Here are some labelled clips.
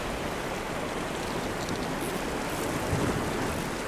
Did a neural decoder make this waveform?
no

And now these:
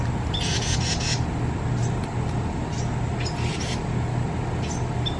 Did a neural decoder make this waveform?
no